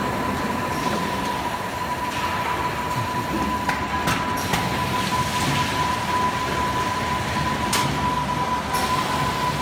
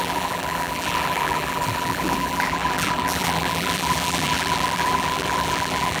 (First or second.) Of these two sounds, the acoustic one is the first